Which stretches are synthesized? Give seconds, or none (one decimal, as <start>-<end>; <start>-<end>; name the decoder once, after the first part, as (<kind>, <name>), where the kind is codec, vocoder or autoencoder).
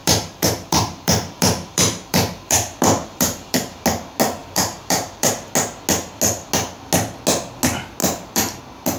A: 0.0-3.8 (vocoder, BigVGAN v2); 4.4-5.3; 8.0-8.6